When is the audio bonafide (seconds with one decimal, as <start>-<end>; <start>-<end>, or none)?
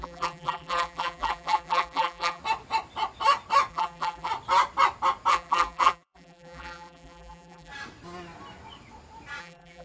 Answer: 2.4-3.7; 4.3-5.3; 7.7-9.4